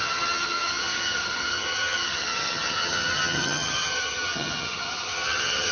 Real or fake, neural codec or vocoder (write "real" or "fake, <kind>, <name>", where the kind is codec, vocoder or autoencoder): fake, vocoder, HiFi-GAN